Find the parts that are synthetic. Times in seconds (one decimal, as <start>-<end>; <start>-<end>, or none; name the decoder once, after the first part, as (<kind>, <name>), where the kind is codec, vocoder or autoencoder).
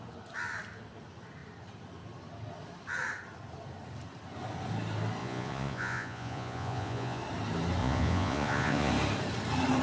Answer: 5.2-7.2 (vocoder, Vocos); 7.8-8.9